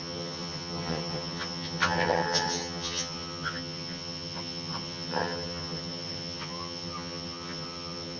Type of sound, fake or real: fake